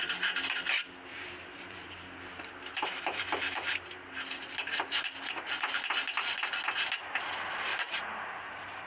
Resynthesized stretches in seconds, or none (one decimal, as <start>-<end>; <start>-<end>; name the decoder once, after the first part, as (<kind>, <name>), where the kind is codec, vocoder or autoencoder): 1.1-5.5 (vocoder, BigVGAN v2); 7.7-8.9